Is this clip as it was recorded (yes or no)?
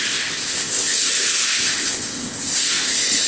no